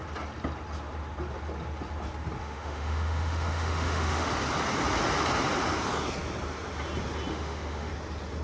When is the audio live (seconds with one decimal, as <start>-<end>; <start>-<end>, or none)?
0.0-2.4; 4.3-7.3; 7.9-8.4